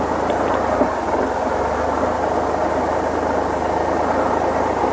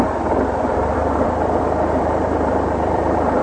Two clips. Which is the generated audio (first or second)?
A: second